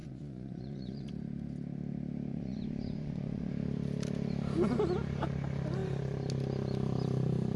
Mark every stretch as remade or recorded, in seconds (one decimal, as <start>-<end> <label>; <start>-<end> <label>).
0.0-1.1 remade; 1.1-2.3 recorded; 2.3-3.5 remade; 3.5-7.6 recorded